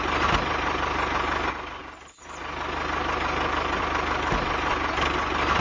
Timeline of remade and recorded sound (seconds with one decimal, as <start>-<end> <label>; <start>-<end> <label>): 0.0-5.6 recorded